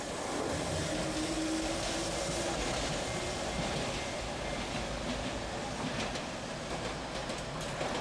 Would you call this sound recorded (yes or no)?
yes